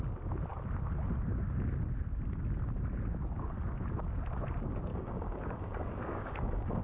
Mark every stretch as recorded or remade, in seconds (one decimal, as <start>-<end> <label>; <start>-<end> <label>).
0.0-4.9 recorded; 4.9-6.8 remade